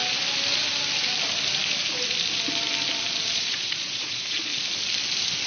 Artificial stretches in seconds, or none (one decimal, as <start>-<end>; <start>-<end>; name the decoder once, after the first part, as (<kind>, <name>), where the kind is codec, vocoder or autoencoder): 3.3-4.5 (vocoder, Vocos)